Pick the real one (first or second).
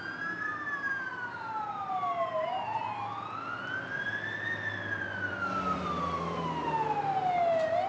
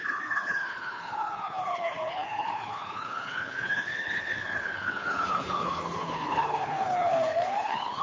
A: first